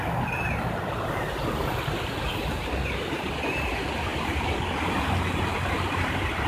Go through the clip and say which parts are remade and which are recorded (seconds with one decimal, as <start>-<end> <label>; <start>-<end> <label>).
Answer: 0.0-6.5 recorded